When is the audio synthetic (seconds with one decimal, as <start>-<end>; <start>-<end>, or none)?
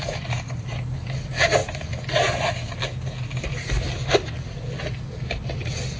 none